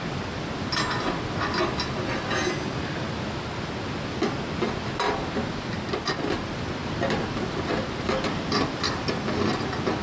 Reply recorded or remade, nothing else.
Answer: recorded